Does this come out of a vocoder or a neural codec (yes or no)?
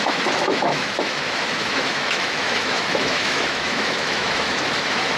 yes